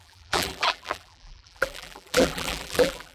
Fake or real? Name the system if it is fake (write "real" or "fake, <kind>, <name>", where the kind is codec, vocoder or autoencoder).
fake, vocoder, BigVGAN v2